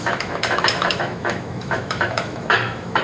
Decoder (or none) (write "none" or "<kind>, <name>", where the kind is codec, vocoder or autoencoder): autoencoder, DAC-VAE